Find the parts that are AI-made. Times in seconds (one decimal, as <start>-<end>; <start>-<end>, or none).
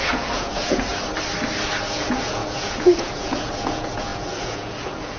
0.0-0.9; 1.7-5.2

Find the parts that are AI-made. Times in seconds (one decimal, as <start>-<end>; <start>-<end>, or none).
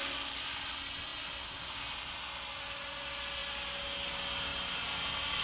none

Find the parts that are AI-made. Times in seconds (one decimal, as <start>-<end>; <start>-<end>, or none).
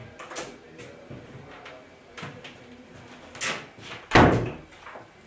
0.0-3.2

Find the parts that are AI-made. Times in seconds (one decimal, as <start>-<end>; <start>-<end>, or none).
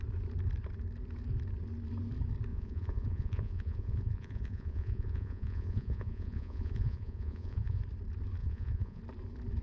2.5-7.8; 8.4-9.0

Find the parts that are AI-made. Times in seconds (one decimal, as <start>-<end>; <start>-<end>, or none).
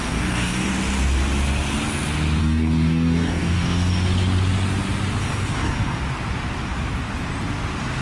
0.0-0.7; 2.4-3.9; 5.2-6.0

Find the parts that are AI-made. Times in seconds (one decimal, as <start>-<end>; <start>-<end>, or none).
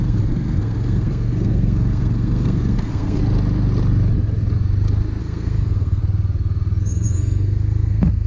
0.0-3.2; 5.2-6.0; 6.8-8.3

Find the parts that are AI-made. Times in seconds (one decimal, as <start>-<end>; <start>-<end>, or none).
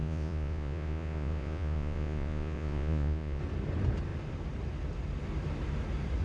0.0-3.4